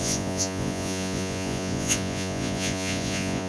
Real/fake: fake